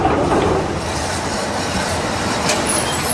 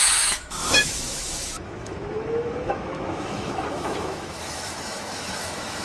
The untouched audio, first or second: first